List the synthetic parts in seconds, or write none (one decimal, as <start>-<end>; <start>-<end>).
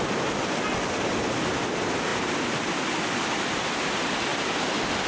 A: none